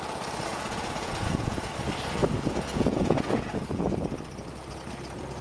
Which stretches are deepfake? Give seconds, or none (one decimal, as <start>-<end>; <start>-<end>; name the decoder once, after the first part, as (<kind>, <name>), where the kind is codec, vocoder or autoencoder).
0.5-1.7 (vocoder, Vocos); 2.2-3.8